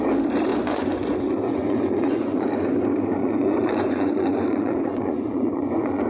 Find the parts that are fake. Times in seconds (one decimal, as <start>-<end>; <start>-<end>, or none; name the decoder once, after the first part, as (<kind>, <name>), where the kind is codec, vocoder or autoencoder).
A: 0.5-2.5 (vocoder, Vocos); 3.2-6.1